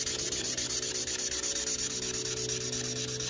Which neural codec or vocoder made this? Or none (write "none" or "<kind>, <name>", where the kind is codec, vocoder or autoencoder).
none